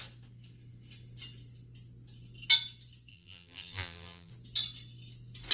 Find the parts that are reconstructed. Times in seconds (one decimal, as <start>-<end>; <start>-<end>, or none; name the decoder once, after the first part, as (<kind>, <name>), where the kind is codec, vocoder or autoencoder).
3.1-4.3 (vocoder, BigVGAN v2)